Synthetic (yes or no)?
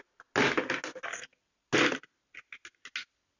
no